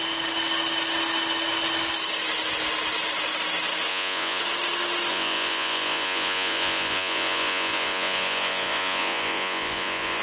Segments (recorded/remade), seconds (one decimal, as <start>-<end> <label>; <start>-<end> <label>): 0.0-3.9 recorded; 3.9-4.4 remade; 4.4-5.1 recorded; 5.1-10.2 remade